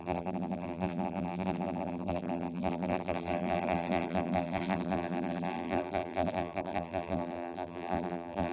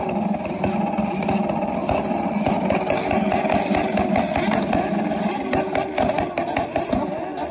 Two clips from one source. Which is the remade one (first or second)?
first